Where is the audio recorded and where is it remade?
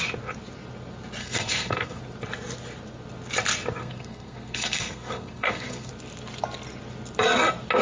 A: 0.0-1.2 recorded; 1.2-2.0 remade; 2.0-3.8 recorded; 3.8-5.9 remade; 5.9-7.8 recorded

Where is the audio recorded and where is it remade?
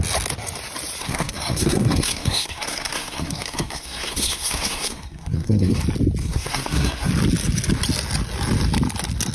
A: 0.0-1.0 recorded; 1.0-5.8 remade; 5.8-6.2 recorded; 6.2-7.1 remade; 7.1-9.3 recorded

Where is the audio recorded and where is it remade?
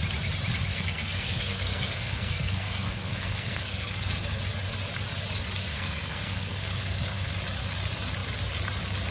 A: 0.0-0.7 recorded; 0.7-4.4 remade; 4.4-5.7 recorded; 5.7-7.3 remade; 7.3-9.1 recorded